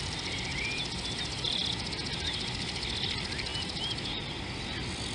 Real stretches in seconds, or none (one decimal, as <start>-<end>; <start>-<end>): 0.0-5.1